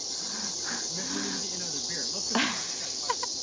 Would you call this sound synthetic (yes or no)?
no